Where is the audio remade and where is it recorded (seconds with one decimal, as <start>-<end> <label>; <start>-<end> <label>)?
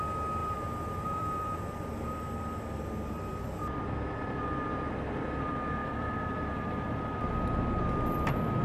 0.0-0.4 recorded; 0.4-3.8 remade; 3.8-5.8 recorded; 5.8-7.2 remade; 7.2-8.6 recorded